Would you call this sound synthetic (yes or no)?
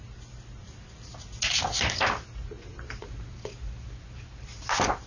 no